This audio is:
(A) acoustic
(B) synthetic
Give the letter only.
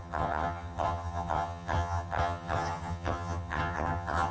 B